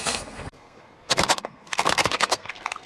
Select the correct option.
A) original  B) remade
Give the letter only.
B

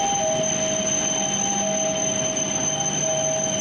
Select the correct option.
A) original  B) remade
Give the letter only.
A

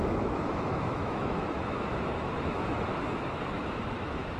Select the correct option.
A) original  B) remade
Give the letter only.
B